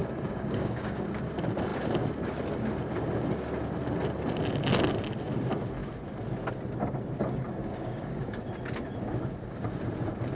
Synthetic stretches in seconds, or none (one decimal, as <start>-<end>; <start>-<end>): 0.0-1.2; 7.6-8.2